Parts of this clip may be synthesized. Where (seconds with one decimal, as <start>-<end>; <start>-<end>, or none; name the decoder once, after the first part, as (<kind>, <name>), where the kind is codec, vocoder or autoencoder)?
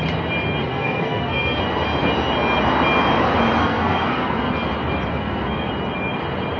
0.6-1.6 (codec, SNAC); 3.6-4.5; 5.1-5.7